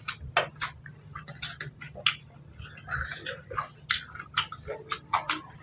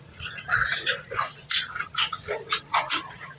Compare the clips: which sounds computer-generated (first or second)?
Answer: second